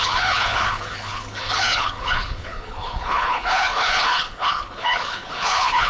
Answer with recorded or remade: remade